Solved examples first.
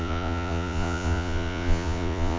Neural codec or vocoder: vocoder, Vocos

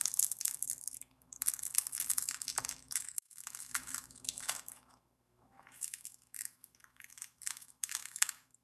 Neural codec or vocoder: autoencoder, DAC-VAE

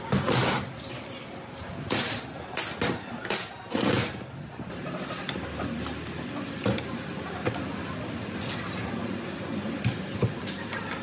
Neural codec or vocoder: none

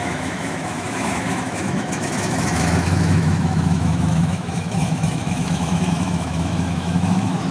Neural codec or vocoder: autoencoder, DAC-VAE